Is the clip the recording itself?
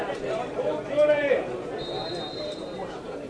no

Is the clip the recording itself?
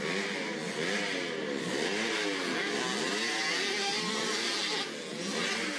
yes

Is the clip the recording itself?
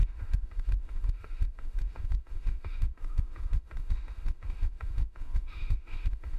no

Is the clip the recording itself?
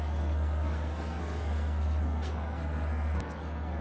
no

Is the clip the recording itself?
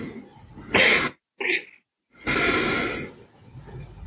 yes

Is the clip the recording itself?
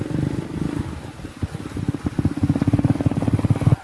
yes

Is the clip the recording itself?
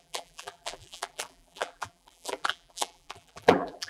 no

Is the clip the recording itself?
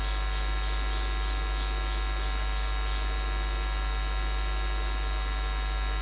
yes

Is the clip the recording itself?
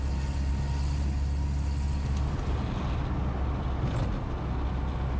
yes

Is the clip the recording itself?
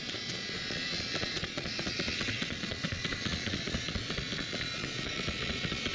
no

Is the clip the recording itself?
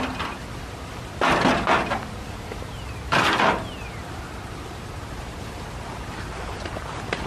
yes